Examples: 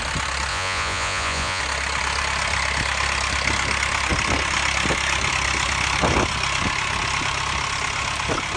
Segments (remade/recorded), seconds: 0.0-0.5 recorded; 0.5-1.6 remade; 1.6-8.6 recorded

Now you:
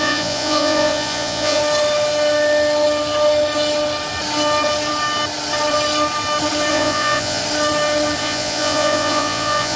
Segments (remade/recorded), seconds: 0.0-1.6 remade; 1.6-6.7 recorded; 6.7-7.4 remade; 7.4-8.2 recorded; 8.2-9.8 remade

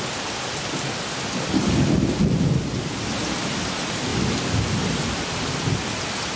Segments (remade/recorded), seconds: 0.0-6.4 recorded

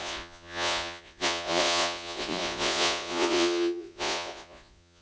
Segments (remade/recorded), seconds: 0.0-5.0 remade

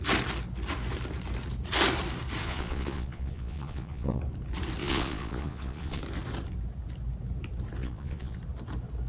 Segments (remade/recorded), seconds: 0.0-2.4 recorded; 2.4-4.2 remade; 4.2-4.8 recorded; 4.8-6.0 remade; 6.0-7.8 recorded; 7.8-8.4 remade; 8.4-9.1 recorded

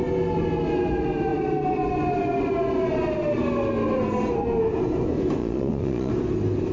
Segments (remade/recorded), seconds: 0.0-5.4 recorded; 5.4-6.1 remade; 6.1-6.7 recorded

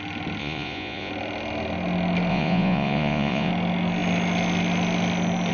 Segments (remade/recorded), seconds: 0.0-0.4 recorded; 0.4-1.1 remade; 1.1-2.3 recorded; 2.3-3.5 remade; 3.5-5.5 recorded

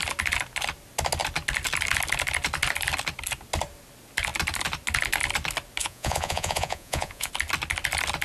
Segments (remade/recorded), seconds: 0.0-5.8 recorded; 5.8-7.3 remade; 7.3-8.2 recorded